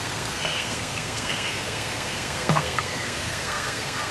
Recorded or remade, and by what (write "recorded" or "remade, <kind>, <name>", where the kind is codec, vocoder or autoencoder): remade, codec, SNAC